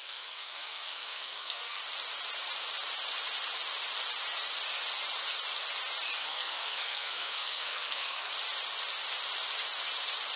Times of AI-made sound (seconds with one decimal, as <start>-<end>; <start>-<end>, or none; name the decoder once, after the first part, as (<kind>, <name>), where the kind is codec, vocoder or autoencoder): 0.0-1.8 (codec, SNAC); 6.2-8.3